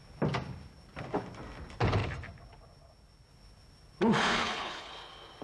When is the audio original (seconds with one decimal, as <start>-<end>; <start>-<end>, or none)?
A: 0.0-4.2; 4.9-5.4